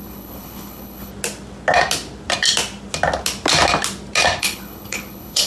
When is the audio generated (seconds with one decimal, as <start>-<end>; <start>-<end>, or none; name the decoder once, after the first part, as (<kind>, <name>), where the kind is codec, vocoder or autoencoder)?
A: 0.0-1.1 (codec, HILCodec); 4.4-5.5